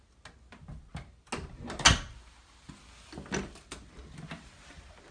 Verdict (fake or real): real